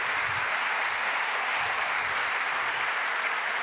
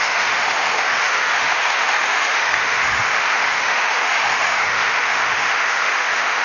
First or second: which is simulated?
second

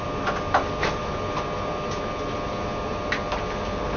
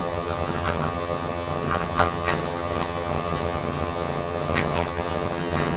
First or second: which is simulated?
second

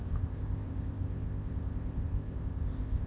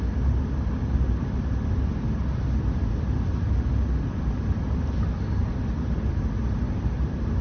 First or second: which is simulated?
first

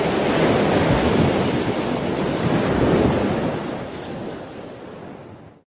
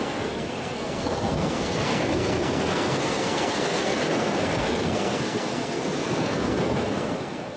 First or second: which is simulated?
second